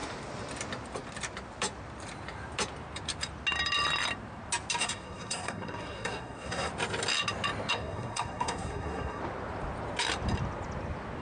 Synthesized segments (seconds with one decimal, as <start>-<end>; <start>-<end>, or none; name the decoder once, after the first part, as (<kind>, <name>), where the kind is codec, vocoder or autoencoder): 4.8-6.7 (codec, SNAC); 7.7-9.2

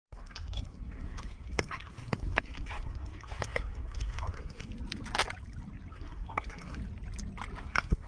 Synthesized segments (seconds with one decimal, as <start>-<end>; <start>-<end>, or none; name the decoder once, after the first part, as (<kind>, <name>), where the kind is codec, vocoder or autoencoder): 0.0-4.7 (codec, SNAC); 5.9-6.8; 7.6-8.1

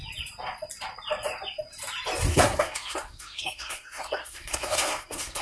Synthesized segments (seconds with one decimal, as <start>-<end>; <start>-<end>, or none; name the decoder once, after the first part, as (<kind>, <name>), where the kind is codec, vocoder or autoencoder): 2.3-5.4 (codec, SNAC)

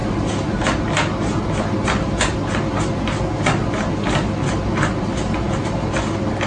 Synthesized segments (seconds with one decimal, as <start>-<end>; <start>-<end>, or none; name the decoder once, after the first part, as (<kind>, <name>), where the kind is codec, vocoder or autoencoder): none